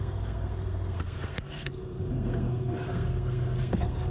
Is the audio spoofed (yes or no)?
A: yes